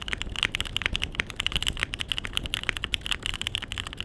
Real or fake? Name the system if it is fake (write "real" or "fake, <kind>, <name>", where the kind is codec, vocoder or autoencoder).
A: real